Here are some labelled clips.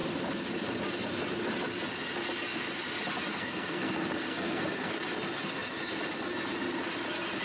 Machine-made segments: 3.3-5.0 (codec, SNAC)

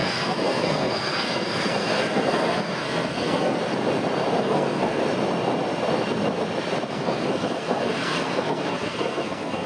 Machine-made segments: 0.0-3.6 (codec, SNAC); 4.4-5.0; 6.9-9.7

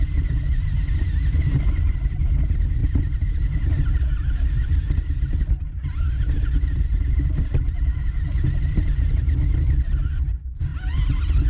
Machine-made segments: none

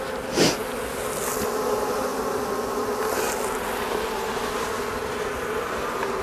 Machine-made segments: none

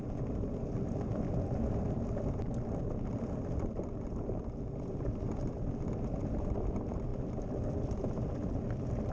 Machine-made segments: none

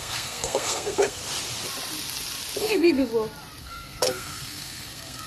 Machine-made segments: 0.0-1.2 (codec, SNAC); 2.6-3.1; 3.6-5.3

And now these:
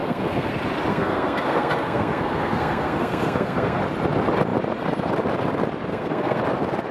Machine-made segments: 0.0-0.5 (codec, SNAC); 0.9-3.8; 5.9-6.4